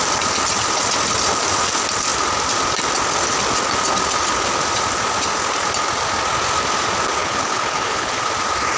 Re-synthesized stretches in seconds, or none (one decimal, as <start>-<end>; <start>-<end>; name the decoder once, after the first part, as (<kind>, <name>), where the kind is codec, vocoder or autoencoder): 7.2-8.2 (codec, HILCodec)